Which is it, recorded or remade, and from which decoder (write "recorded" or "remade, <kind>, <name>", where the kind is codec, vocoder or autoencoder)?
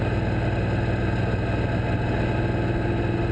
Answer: recorded